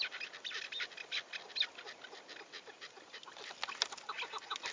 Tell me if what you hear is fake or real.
real